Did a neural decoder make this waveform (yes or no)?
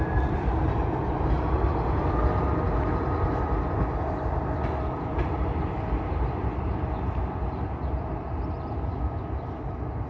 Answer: no